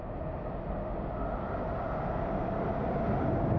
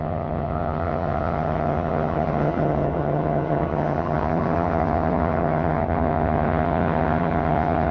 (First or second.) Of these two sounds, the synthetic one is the second